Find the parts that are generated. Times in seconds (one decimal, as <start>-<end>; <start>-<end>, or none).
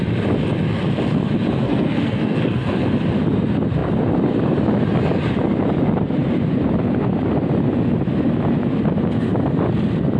1.6-2.9